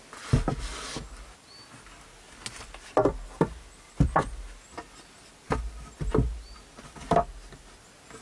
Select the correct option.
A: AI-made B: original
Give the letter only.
B